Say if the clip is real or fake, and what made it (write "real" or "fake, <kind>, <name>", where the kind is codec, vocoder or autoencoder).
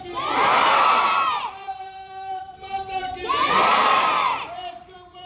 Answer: fake, vocoder, BigVGAN v2